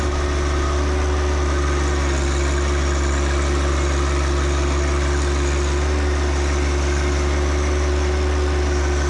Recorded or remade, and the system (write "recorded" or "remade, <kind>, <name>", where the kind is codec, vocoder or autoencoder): recorded